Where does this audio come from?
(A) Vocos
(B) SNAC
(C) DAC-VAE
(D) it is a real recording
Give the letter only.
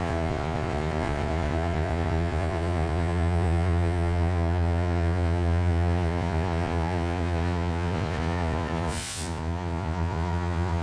A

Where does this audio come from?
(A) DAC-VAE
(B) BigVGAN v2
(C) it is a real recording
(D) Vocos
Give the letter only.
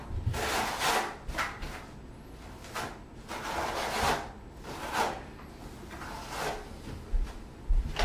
C